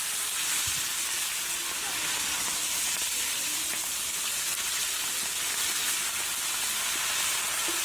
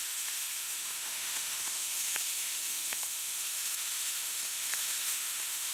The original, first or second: first